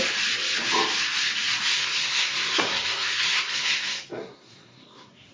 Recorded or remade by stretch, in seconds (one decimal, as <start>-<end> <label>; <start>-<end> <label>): 0.0-1.7 recorded; 1.7-5.3 remade